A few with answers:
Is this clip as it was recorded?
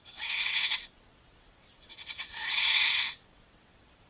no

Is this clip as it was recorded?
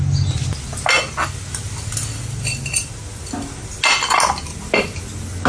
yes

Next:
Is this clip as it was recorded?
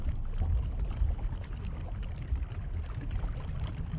yes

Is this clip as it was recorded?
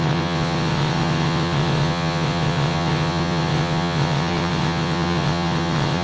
no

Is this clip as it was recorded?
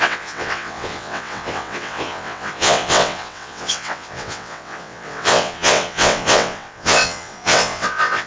no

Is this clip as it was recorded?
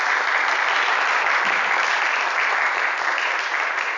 yes